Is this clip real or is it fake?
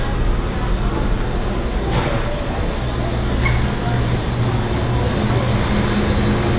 real